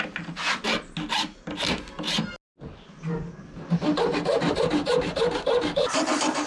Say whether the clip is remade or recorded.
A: recorded